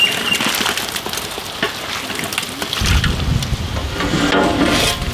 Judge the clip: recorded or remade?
recorded